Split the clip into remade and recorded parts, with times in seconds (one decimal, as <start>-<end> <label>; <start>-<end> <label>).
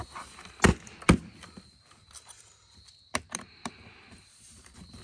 0.0-5.0 recorded